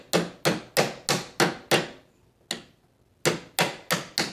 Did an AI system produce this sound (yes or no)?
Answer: no